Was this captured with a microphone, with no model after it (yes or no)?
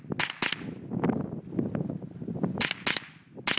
yes